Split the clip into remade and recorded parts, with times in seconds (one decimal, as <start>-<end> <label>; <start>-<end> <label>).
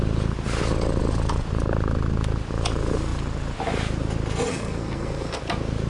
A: 0.0-4.5 recorded; 4.5-5.4 remade; 5.4-5.9 recorded